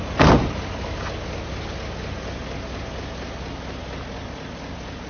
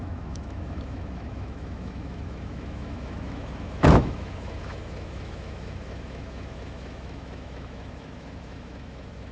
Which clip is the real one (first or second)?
first